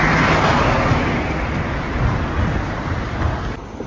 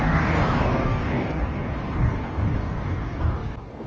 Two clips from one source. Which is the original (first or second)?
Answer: first